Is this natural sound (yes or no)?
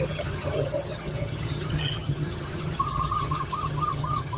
no